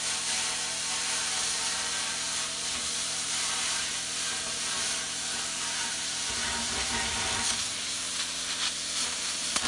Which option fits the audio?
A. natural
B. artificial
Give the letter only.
B